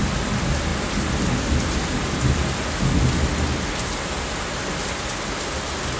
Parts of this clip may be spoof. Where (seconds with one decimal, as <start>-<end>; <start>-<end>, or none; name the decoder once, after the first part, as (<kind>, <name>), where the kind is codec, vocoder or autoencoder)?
none